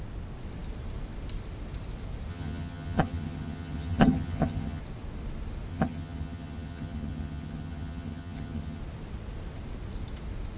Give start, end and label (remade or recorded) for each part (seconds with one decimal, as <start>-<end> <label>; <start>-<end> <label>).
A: 0.0-2.3 recorded; 2.3-4.8 remade; 4.8-5.7 recorded; 5.7-8.8 remade; 8.8-10.6 recorded